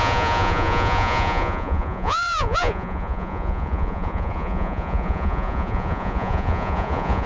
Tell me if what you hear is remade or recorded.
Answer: remade